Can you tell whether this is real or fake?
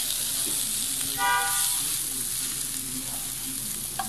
real